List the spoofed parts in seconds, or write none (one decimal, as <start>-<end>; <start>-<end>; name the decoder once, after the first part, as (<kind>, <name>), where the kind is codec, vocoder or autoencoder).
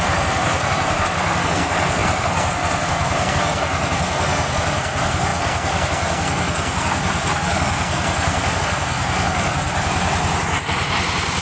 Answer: 0.0-9.7 (codec, SNAC)